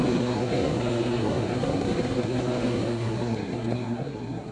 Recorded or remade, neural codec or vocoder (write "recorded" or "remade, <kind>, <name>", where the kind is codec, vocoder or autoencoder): remade, codec, SNAC